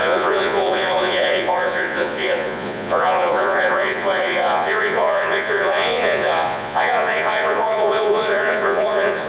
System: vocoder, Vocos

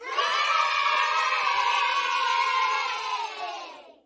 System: vocoder, Vocos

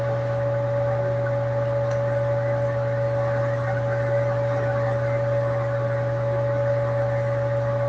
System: none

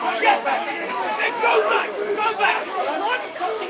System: codec, DAC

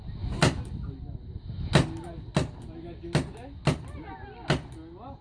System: none